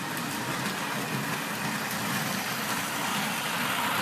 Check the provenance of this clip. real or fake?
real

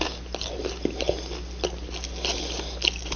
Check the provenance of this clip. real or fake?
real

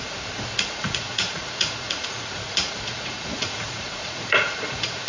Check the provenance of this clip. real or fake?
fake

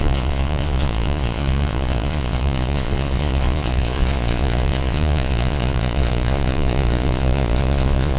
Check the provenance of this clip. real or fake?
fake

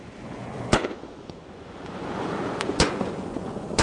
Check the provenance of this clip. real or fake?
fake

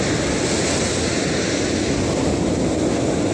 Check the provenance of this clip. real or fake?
real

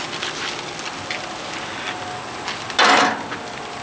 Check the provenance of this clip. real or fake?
real